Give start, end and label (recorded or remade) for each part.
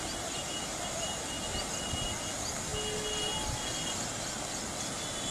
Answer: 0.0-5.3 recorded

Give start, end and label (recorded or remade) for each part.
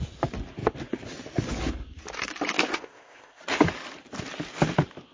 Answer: 0.0-2.7 recorded; 2.7-3.4 remade; 3.4-5.1 recorded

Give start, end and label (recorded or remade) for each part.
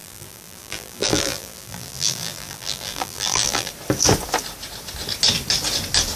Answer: 0.0-3.7 remade; 3.7-6.2 recorded